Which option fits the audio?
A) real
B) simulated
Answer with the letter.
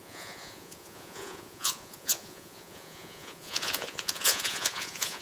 B